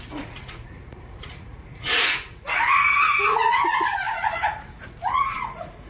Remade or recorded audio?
remade